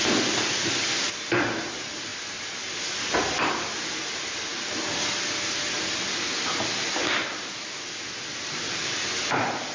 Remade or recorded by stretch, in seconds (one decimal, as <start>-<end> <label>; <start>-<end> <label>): 0.0-9.7 recorded